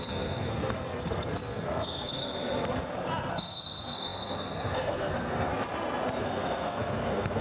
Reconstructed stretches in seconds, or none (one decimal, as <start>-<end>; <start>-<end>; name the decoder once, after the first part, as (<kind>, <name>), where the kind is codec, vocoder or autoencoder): 0.0-2.2 (codec, SNAC); 3.3-5.5; 6.2-7.4